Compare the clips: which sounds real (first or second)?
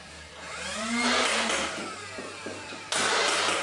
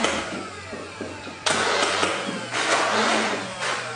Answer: first